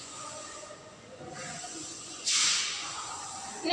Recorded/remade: remade